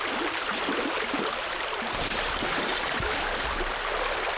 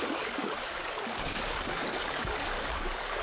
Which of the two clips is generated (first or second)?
second